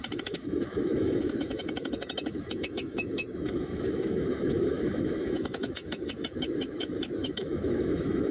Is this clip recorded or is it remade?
remade